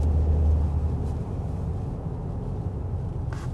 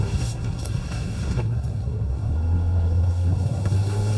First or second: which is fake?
second